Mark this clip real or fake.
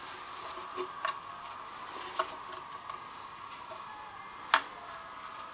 real